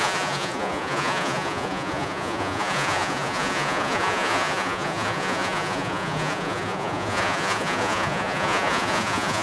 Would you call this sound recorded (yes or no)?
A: no